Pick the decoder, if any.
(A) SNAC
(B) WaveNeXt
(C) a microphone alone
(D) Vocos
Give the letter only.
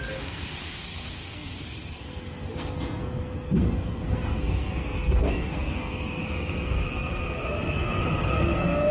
A